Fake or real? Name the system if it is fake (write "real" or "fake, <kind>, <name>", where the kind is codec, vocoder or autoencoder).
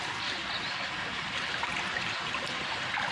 real